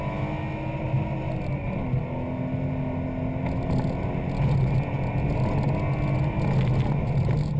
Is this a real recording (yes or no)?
yes